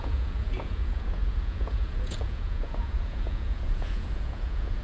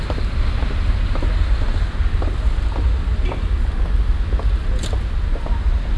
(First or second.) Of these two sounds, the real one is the second